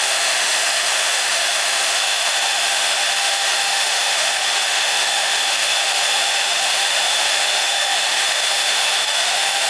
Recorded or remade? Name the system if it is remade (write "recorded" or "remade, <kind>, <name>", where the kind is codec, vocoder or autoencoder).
remade, autoencoder, DAC-VAE